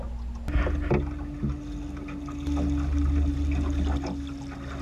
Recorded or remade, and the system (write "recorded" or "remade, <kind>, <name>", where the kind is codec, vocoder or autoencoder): recorded